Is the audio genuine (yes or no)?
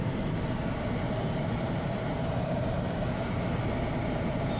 no